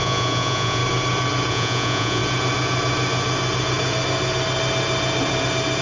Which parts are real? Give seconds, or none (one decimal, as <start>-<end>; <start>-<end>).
0.8-1.5; 2.2-5.8